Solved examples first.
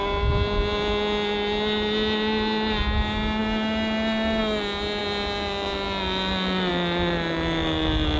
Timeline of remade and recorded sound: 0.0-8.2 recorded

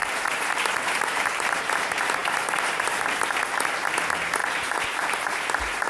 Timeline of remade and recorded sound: 0.0-1.6 remade; 1.6-2.2 recorded; 2.2-3.2 remade; 3.2-4.4 recorded; 4.4-5.9 remade

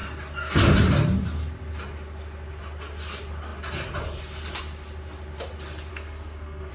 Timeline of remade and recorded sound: 0.0-5.9 recorded; 5.9-6.7 remade

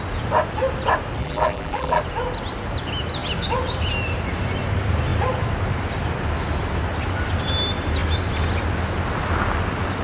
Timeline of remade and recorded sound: 0.0-1.2 recorded; 1.2-2.0 remade; 2.0-10.0 recorded